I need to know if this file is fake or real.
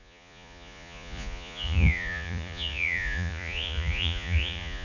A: fake